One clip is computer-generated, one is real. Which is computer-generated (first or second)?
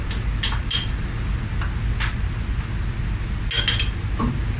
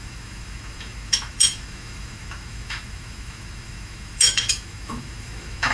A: second